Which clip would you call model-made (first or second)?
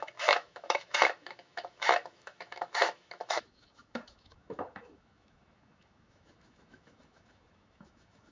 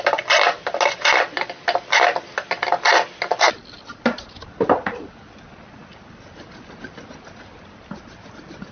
first